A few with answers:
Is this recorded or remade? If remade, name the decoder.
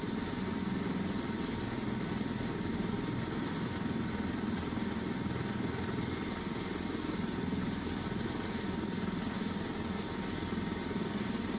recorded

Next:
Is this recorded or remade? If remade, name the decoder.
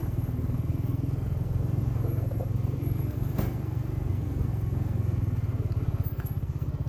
remade, codec, SNAC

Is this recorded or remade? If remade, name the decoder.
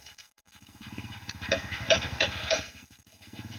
remade, codec, SNAC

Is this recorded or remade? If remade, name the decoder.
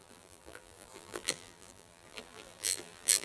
remade, vocoder, BigVGAN v2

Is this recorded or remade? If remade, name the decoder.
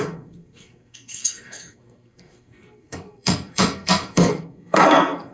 remade, codec, SNAC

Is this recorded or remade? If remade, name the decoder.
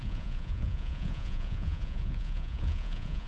remade, vocoder, Vocos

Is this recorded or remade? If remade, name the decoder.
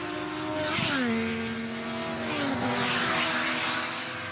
recorded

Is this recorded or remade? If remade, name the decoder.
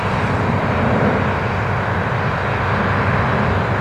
recorded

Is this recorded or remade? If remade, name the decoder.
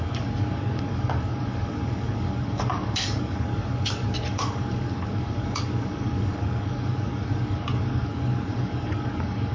remade, codec, DAC